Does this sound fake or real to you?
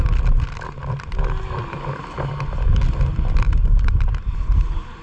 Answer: real